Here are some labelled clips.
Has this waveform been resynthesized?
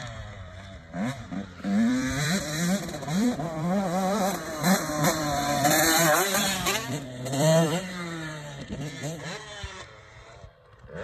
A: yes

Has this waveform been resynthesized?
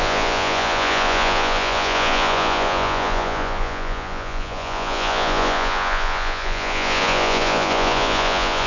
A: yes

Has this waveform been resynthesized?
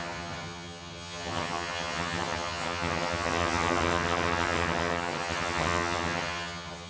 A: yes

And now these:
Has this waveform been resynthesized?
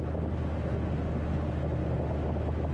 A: no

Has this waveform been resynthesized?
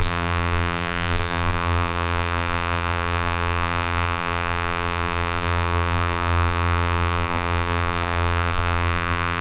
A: yes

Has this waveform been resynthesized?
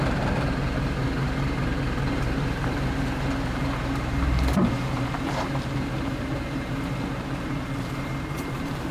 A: yes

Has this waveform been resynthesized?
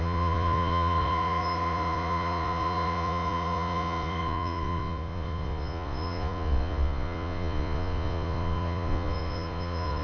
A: yes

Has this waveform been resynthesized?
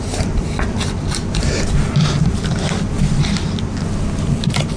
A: no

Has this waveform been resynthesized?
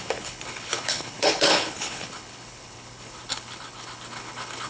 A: yes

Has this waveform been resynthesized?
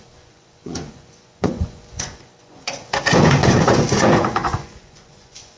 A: yes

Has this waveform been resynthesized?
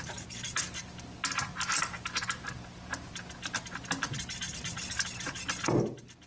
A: no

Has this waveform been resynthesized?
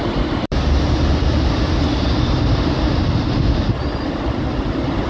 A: yes